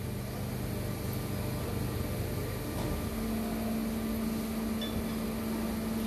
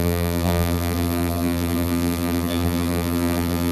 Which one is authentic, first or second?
first